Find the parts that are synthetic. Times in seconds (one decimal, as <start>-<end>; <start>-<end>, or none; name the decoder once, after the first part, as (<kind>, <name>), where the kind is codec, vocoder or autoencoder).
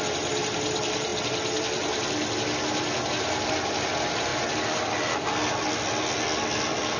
none